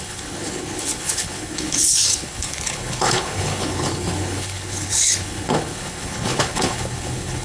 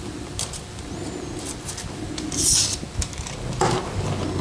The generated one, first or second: first